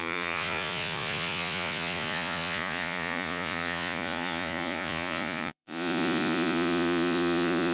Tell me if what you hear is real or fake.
fake